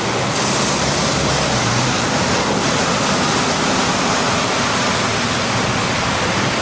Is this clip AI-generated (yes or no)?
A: no